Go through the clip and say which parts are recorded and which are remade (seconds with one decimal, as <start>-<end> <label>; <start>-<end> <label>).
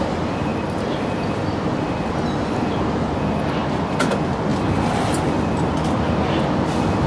0.0-7.1 recorded